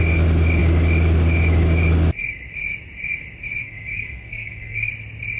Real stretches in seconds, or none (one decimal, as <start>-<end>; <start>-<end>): 0.0-3.6; 4.9-5.4